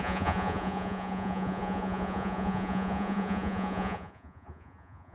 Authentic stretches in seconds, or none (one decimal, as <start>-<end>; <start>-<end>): none